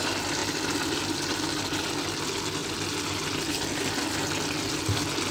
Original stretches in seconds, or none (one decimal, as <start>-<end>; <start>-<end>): 0.0-5.3